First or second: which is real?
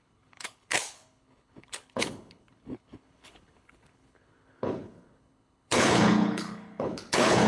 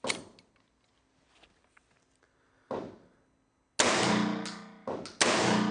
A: second